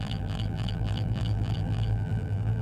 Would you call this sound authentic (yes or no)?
no